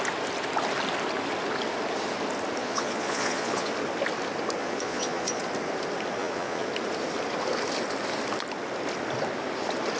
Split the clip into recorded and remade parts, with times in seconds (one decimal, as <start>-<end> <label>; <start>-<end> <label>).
0.0-2.6 recorded; 2.6-3.7 remade; 3.7-4.6 recorded; 4.6-5.4 remade; 5.4-6.2 recorded; 6.2-6.7 remade; 6.7-10.0 recorded